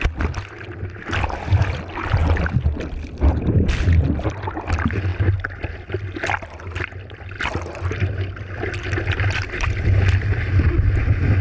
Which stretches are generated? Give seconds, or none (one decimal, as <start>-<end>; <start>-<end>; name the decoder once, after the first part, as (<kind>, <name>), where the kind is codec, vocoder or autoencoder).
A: none